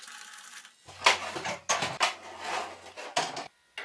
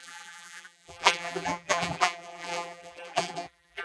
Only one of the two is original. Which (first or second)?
first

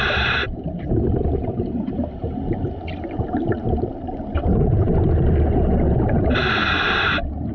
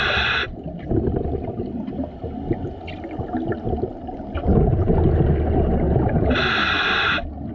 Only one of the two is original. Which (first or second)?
second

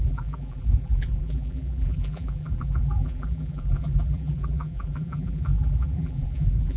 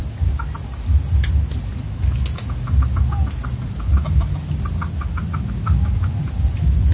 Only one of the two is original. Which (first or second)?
second